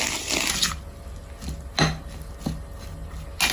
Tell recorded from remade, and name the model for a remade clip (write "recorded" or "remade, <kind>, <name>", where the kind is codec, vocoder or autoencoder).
recorded